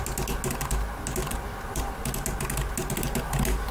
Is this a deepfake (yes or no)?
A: no